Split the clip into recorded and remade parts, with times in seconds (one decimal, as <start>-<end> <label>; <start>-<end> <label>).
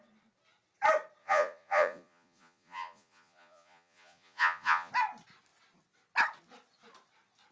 0.0-1.2 recorded; 1.2-4.9 remade; 4.9-7.5 recorded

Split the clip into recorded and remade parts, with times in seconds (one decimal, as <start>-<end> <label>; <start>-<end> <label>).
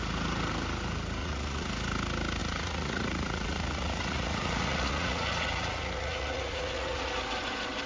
0.0-1.2 recorded; 1.2-1.7 remade; 1.7-2.4 recorded; 2.4-7.1 remade; 7.1-7.9 recorded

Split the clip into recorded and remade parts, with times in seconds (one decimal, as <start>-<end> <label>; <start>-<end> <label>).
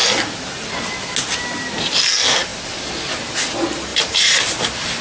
0.0-3.9 recorded; 3.9-4.4 remade; 4.4-5.0 recorded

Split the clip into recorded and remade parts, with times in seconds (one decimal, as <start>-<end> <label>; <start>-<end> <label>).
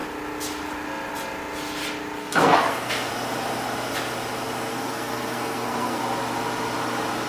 0.0-2.2 recorded; 2.2-3.1 remade; 3.1-4.7 recorded; 4.7-6.0 remade; 6.0-7.3 recorded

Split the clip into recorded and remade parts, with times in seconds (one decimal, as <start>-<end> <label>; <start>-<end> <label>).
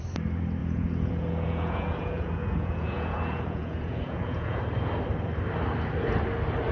0.0-0.6 recorded; 0.6-4.6 remade; 4.6-6.7 recorded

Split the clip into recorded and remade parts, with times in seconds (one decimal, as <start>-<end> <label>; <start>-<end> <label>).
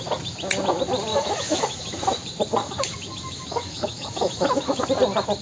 0.0-1.1 recorded; 1.1-2.0 remade; 2.0-2.6 recorded; 2.6-4.8 remade; 4.8-5.4 recorded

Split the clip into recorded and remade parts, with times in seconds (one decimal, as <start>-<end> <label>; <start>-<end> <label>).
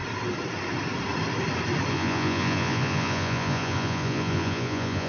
0.0-1.9 recorded; 1.9-5.1 remade